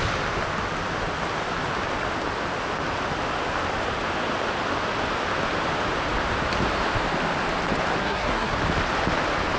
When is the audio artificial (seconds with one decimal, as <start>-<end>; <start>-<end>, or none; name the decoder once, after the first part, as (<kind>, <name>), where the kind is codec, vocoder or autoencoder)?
8.0-8.6 (codec, SNAC)